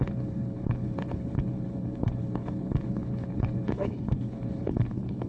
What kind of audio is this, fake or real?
fake